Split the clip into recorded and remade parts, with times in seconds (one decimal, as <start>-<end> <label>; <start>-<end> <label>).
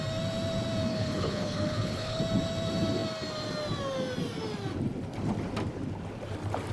0.0-0.9 recorded; 0.9-2.2 remade; 2.2-6.7 recorded